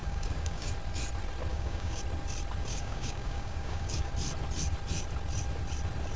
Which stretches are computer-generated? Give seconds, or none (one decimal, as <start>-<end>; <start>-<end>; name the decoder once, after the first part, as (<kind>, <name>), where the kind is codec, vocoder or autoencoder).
0.0-0.7 (codec, DAC); 1.5-2.0; 2.7-4.1